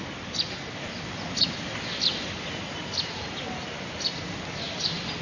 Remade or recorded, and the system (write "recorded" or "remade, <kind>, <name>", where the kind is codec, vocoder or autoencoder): recorded